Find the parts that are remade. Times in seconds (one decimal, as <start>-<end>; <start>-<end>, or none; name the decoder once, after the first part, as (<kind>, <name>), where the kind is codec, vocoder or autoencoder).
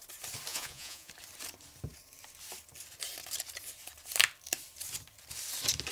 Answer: 0.5-1.1 (vocoder, Vocos)